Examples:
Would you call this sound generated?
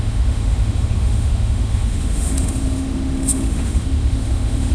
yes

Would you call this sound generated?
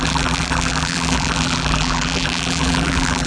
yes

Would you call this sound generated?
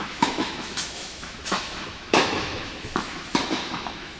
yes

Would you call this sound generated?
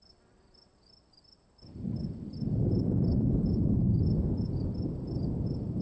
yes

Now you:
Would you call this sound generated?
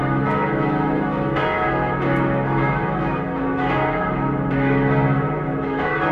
yes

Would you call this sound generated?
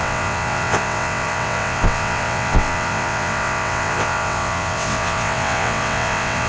yes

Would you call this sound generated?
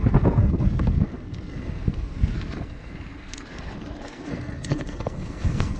yes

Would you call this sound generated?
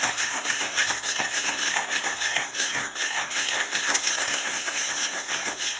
yes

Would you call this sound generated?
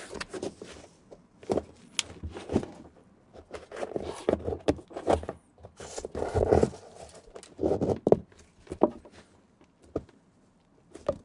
no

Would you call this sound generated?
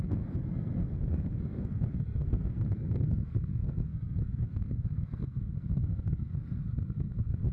yes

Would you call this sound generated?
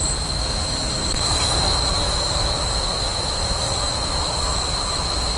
yes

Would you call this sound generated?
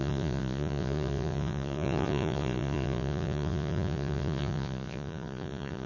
yes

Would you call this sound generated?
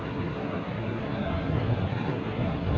yes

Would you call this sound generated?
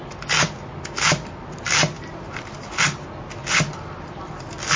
no